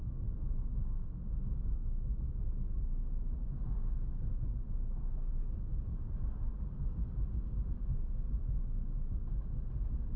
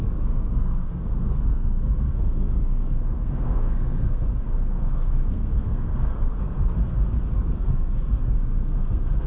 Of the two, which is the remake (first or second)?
second